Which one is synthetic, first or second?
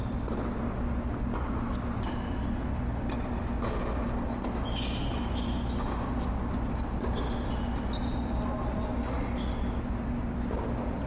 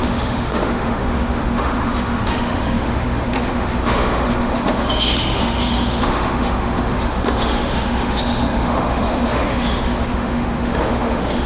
second